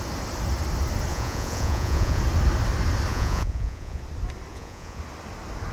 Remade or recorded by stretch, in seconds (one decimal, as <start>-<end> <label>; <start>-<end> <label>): 0.0-1.1 recorded; 1.1-2.2 remade; 2.2-3.1 recorded; 3.1-4.0 remade; 4.0-4.5 recorded; 4.5-5.0 remade; 5.0-5.7 recorded